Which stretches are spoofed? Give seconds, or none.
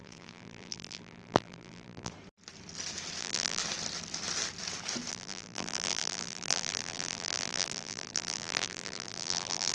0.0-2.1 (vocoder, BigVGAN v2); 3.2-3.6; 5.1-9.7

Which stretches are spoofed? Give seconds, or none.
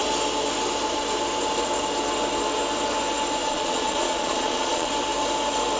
3.4-4.9 (vocoder, Vocos)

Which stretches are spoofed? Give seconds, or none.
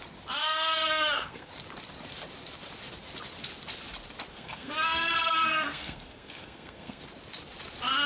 0.4-1.5 (codec, SNAC); 4.3-7.0